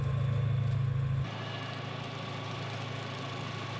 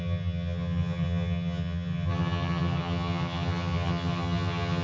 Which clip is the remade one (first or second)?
second